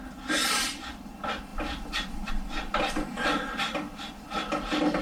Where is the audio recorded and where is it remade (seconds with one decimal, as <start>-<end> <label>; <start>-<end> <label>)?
0.0-5.0 recorded

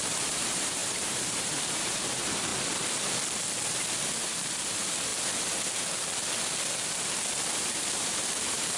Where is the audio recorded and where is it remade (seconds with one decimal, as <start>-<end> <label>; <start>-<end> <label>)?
0.0-2.5 remade; 2.5-4.2 recorded; 4.2-5.1 remade; 5.1-7.6 recorded; 7.6-8.8 remade

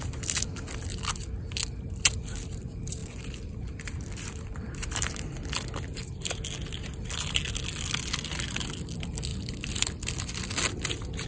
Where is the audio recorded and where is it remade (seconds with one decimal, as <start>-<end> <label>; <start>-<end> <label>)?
0.0-3.0 recorded; 3.0-5.8 remade; 5.8-9.3 recorded; 9.3-10.5 remade; 10.5-11.3 recorded

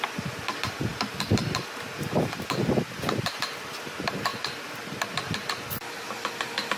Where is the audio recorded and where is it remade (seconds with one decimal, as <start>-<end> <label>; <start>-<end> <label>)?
0.0-6.8 recorded